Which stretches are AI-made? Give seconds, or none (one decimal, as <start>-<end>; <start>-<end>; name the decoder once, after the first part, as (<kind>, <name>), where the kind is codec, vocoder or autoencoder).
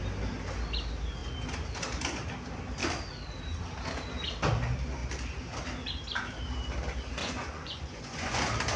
7.2-8.4 (vocoder, Vocos)